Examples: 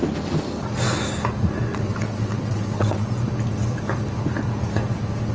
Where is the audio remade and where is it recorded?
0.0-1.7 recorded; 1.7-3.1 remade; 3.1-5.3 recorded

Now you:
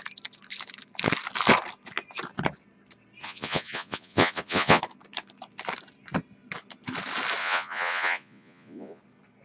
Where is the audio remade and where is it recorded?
0.0-3.2 recorded; 3.2-4.8 remade; 4.8-7.4 recorded; 7.4-9.0 remade; 9.0-9.4 recorded